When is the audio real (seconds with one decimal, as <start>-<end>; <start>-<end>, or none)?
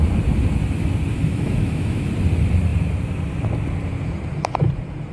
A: 0.0-1.1; 2.1-5.1